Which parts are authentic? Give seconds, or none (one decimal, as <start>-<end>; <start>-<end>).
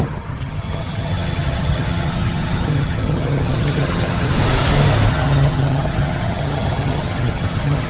4.3-5.1